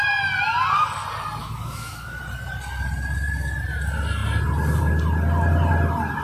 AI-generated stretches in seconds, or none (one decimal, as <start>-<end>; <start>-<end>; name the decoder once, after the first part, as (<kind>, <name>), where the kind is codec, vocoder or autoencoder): 1.4-2.2 (autoencoder, DAC-VAE)